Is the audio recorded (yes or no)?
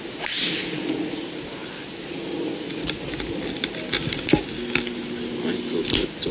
yes